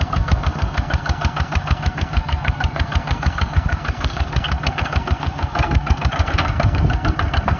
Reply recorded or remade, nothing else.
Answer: remade